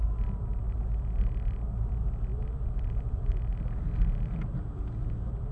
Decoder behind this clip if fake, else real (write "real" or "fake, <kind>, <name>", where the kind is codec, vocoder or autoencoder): real